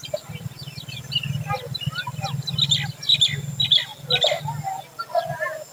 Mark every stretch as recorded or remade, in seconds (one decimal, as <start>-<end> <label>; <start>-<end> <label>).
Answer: 0.0-5.7 recorded

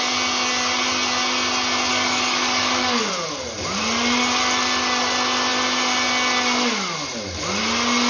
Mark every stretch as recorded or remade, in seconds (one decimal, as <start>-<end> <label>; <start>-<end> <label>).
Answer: 0.0-1.9 recorded; 1.9-3.1 remade; 3.1-8.1 recorded

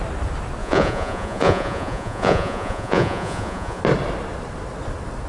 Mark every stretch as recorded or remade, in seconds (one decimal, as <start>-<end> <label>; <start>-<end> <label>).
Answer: 0.0-0.6 recorded; 0.6-3.8 remade; 3.8-5.3 recorded

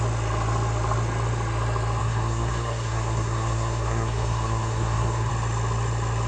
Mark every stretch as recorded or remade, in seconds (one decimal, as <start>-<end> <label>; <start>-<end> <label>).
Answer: 0.0-2.0 recorded; 2.0-5.3 remade; 5.3-6.3 recorded

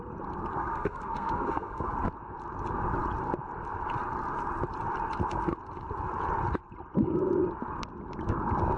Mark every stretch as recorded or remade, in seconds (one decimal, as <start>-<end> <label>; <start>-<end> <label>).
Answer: 0.0-0.6 recorded; 0.6-1.8 remade; 1.8-8.8 recorded

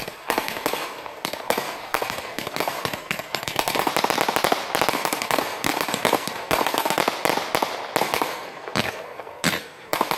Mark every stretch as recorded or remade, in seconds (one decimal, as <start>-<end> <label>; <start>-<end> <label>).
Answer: 0.0-3.9 remade; 3.9-4.9 recorded; 4.9-7.0 remade; 7.0-8.0 recorded; 8.0-10.2 remade

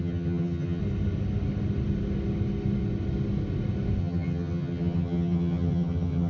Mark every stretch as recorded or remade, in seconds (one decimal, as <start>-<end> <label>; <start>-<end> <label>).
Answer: 0.0-0.8 remade; 0.8-4.0 recorded; 4.0-6.3 remade